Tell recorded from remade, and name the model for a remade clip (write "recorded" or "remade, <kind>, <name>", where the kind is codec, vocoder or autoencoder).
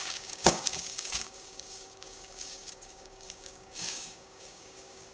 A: remade, codec, DAC